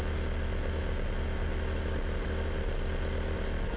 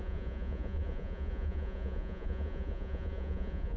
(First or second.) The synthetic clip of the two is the second